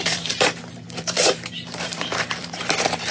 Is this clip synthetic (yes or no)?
yes